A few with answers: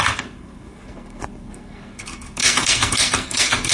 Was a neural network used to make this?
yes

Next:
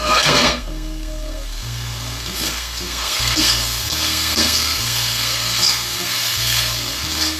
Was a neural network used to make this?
yes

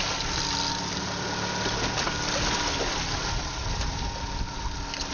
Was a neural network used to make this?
no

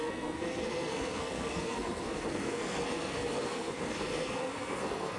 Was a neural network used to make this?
yes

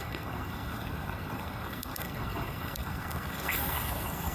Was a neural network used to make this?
yes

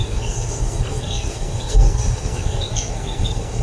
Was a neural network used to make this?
yes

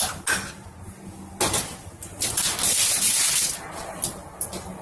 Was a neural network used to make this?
no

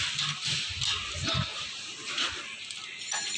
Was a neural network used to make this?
no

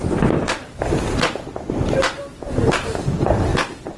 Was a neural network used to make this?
no